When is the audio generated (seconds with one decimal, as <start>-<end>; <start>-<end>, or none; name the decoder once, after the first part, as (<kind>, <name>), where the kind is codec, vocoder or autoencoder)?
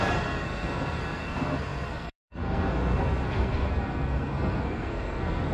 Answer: 0.0-5.5 (codec, SNAC)